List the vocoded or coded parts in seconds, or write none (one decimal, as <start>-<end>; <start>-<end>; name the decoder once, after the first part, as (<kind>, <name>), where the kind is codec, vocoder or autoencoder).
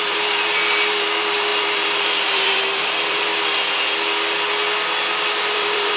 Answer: 0.0-3.3 (vocoder, BigVGAN v2); 5.3-6.0